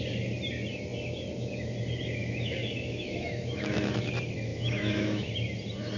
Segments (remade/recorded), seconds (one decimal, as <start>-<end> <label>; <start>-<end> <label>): 0.0-2.2 recorded; 2.2-4.1 remade; 4.1-4.5 recorded; 4.5-5.3 remade; 5.3-6.0 recorded